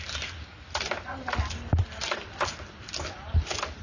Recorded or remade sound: recorded